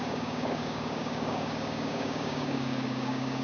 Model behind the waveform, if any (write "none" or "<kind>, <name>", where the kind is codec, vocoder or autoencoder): codec, DAC